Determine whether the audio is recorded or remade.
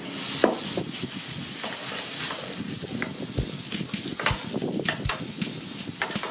recorded